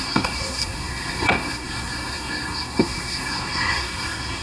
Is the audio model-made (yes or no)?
yes